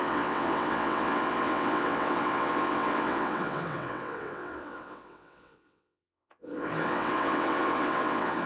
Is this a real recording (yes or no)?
no